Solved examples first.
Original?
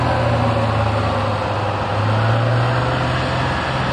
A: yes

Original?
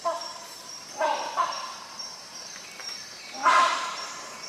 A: no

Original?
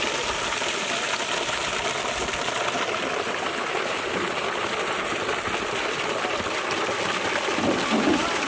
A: yes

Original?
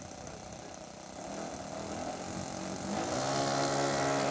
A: yes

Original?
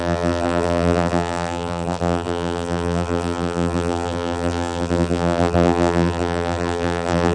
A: no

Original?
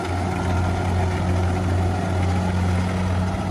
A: yes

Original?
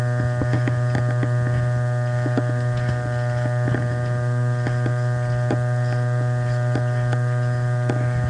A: yes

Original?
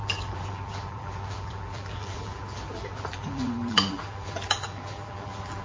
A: no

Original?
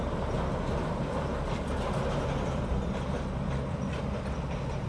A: yes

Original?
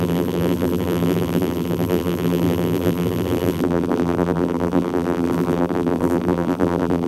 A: no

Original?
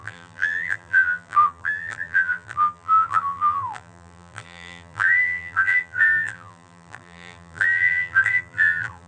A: no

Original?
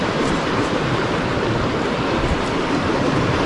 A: no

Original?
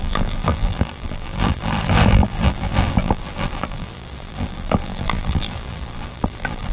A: no